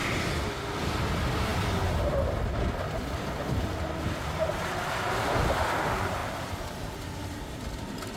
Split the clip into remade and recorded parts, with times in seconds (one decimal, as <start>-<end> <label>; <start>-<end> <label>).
0.0-8.2 recorded